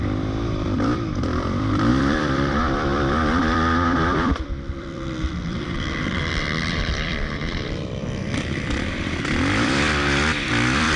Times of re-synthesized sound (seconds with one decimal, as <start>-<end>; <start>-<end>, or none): 0.0-11.0